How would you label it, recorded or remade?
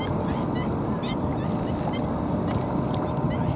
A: recorded